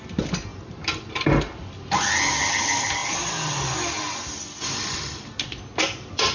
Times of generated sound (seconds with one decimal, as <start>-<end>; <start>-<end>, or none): none